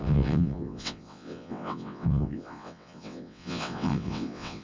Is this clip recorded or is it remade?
remade